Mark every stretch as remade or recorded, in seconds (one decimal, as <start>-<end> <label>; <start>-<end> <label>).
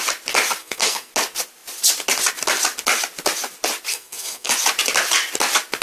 0.0-0.6 recorded; 0.6-1.1 remade; 1.1-3.9 recorded; 3.9-4.5 remade; 4.5-5.8 recorded